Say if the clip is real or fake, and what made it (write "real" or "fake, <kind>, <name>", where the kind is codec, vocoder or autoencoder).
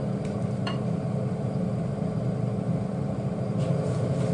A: fake, vocoder, BigVGAN v2